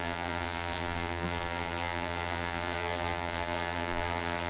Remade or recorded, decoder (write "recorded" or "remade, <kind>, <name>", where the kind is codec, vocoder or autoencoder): remade, vocoder, BigVGAN v2